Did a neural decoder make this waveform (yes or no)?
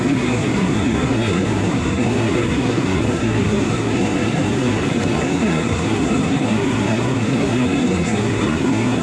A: yes